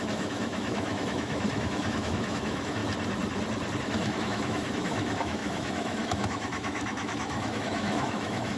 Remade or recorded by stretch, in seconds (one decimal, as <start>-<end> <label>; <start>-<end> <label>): 0.0-2.8 remade; 2.8-3.8 recorded; 3.8-8.6 remade